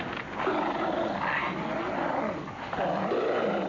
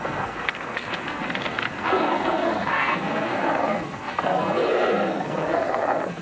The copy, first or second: second